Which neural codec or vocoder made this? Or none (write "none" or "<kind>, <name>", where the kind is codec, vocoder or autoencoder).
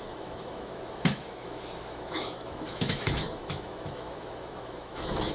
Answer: autoencoder, DAC-VAE